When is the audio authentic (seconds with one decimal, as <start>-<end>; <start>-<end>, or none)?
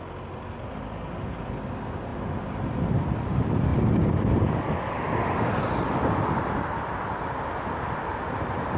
0.0-8.8